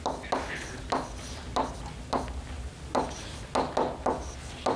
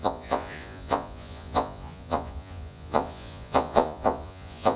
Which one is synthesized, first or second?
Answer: second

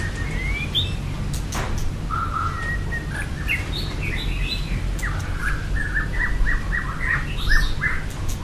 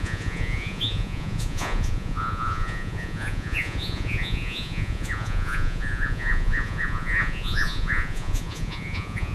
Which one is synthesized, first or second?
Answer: second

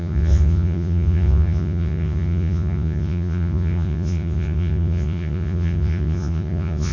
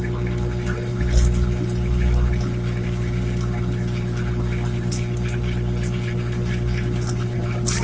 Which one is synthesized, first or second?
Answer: first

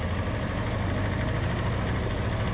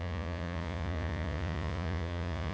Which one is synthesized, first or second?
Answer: second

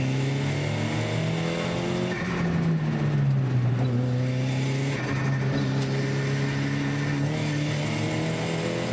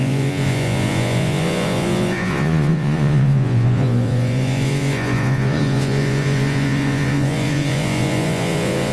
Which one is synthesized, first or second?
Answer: second